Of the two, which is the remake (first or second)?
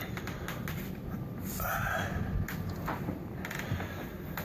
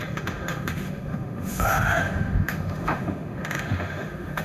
second